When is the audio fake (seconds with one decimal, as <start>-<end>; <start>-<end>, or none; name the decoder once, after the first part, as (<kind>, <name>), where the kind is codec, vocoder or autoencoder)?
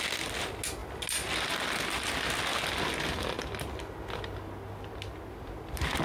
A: none